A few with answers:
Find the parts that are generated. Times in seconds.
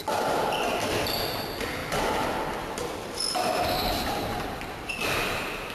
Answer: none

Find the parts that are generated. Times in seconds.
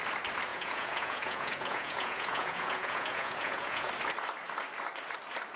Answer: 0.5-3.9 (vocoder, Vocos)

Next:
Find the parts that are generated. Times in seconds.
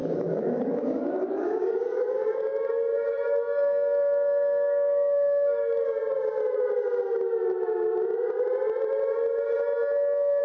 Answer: 0.0-6.0 (codec, DAC)